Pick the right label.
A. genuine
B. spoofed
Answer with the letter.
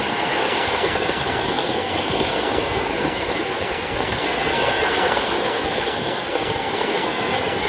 B